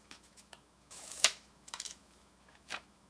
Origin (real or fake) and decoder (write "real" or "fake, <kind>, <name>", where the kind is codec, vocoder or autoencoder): fake, autoencoder, DAC-VAE